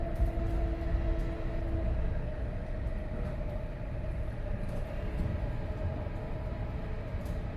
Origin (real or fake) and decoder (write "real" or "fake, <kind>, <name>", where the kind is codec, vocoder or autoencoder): real